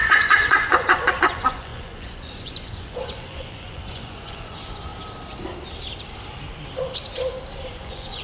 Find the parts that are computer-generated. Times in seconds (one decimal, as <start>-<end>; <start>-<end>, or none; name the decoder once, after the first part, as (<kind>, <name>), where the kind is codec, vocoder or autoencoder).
0.0-4.9 (vocoder, Vocos); 7.7-8.2